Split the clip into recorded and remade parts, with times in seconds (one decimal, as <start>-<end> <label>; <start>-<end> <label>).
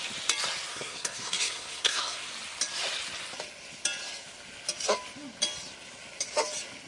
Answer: 0.0-0.7 recorded; 0.7-2.3 remade; 2.3-6.9 recorded